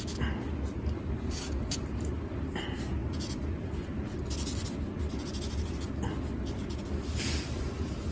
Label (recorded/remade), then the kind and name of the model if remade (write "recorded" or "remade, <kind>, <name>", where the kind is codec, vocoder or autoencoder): remade, vocoder, BigVGAN v2